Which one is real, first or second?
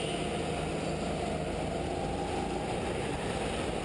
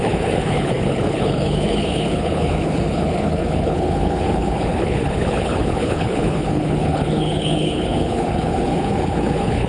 first